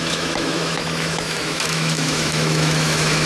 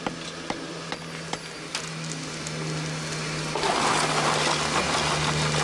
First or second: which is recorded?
second